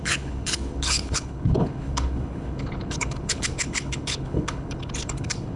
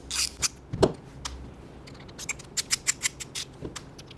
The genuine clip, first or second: second